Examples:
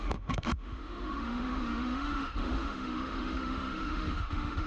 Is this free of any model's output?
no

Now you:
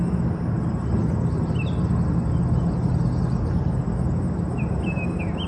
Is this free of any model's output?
yes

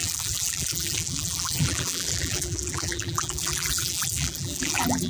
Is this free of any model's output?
no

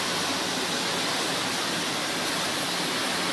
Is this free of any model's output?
yes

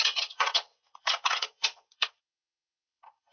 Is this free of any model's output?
no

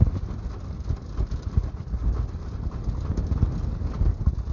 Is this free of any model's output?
yes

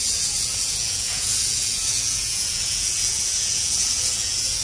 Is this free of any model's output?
no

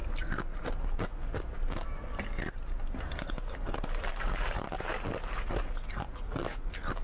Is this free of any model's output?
yes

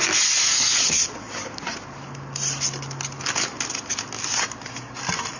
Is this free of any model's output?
yes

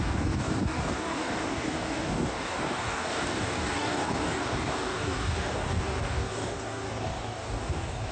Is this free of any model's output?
no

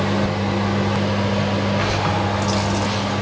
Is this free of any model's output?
yes